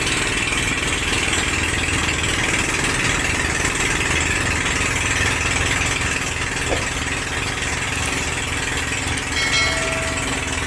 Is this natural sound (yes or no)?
yes